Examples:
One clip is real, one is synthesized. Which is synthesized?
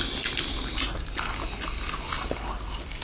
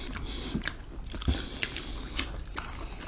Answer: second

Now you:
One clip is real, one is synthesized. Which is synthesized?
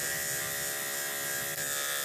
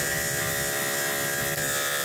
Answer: second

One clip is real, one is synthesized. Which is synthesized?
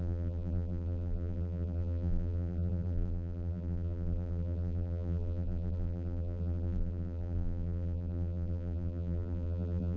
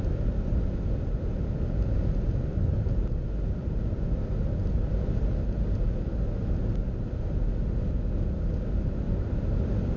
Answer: first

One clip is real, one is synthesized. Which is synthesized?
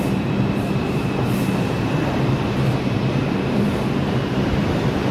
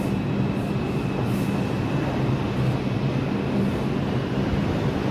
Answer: first